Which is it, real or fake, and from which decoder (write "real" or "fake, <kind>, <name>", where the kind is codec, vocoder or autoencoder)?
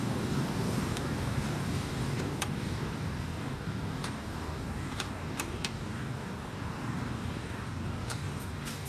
fake, codec, DAC